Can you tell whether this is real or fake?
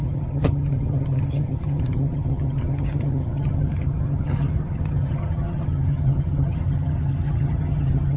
fake